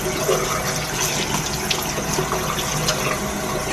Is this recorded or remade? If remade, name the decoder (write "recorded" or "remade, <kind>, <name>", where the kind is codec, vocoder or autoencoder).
recorded